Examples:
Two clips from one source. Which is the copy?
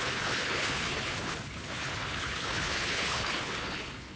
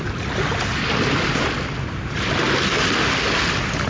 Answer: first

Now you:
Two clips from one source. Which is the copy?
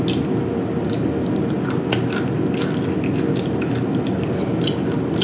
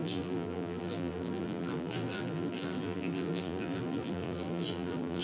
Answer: second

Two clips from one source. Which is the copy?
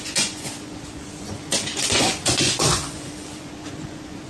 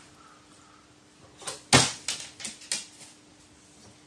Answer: first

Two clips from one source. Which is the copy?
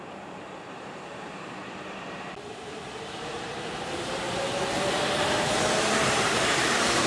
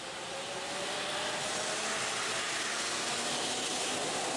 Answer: first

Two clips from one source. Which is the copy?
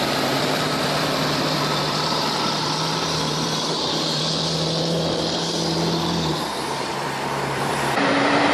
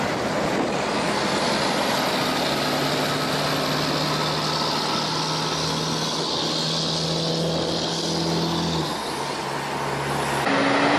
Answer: first